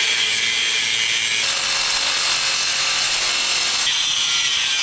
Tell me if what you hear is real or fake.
real